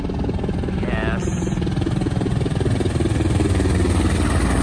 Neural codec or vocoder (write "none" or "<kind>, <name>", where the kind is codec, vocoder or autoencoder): vocoder, BigVGAN v2